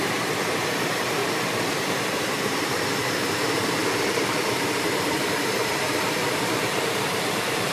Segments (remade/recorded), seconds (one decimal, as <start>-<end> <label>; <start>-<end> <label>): 0.0-7.7 remade